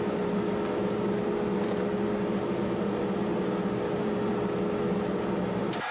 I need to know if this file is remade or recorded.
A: recorded